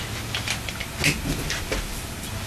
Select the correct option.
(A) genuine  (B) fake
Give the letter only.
A